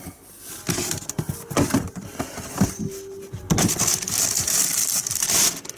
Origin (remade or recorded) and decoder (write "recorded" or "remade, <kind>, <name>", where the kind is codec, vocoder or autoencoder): recorded